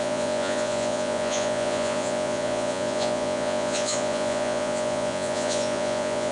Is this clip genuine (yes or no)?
no